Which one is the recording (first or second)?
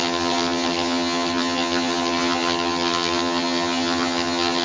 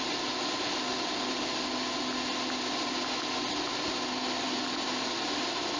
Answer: second